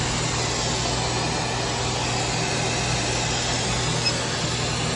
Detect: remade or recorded recorded